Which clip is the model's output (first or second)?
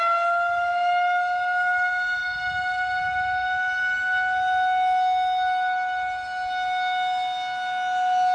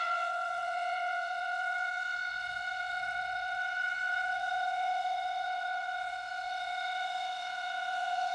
second